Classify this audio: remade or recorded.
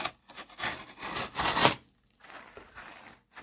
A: recorded